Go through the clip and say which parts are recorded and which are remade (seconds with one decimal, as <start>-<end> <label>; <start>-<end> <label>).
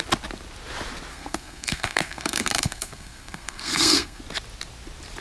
0.0-1.1 recorded; 1.1-4.2 remade; 4.2-5.2 recorded